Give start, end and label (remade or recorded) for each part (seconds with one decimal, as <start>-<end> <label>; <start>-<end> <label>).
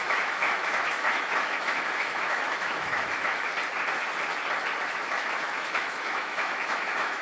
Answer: 0.0-3.5 remade; 3.5-4.9 recorded; 4.9-7.2 remade